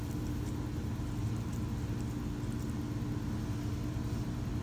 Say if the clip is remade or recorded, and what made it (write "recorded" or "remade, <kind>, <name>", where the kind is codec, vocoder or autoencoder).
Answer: recorded